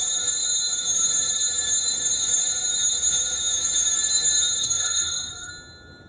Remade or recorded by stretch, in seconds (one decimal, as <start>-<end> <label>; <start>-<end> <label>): 0.0-4.6 recorded; 4.6-5.5 remade; 5.5-6.1 recorded